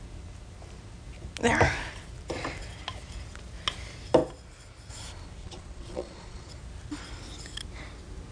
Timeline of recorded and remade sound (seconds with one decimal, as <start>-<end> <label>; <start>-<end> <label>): 0.0-5.4 recorded; 5.4-6.5 remade; 6.5-8.3 recorded